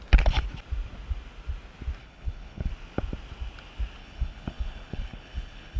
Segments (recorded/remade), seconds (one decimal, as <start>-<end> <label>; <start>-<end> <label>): 0.0-2.0 recorded; 2.0-2.7 remade; 2.7-4.0 recorded; 4.0-5.8 remade